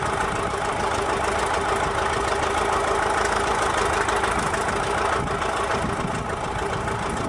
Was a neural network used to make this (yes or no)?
no